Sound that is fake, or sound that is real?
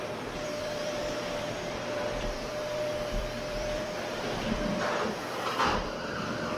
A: fake